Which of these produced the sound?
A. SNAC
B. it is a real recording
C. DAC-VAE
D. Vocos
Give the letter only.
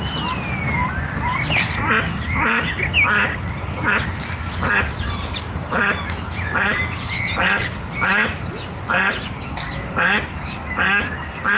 B